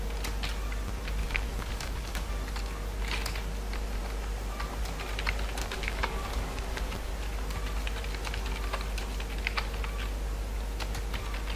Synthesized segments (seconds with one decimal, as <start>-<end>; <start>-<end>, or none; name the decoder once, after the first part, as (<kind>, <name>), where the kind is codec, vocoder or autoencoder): 1.2-2.3 (codec, DAC); 5.6-7.1